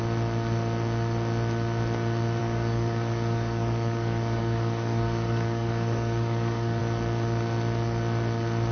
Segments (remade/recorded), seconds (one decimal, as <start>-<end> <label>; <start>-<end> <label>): 0.0-2.4 recorded; 2.4-6.8 remade; 6.8-8.7 recorded